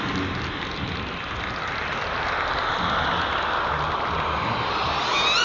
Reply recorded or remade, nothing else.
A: recorded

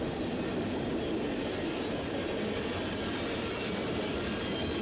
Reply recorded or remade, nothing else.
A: recorded